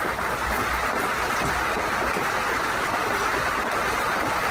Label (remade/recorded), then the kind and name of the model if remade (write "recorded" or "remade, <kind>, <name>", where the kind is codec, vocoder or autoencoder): recorded